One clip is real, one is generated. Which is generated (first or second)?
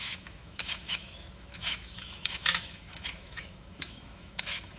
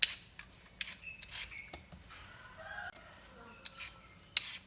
first